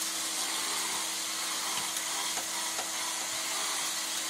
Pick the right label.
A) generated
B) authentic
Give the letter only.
B